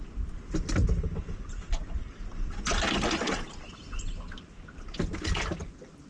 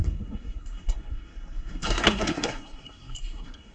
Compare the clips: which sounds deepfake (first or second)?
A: second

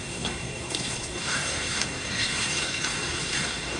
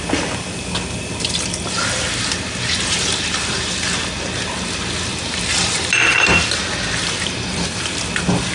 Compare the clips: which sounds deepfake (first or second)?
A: first